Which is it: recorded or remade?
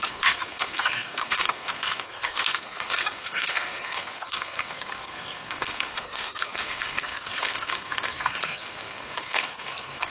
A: remade